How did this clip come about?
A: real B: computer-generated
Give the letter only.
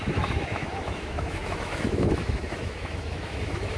B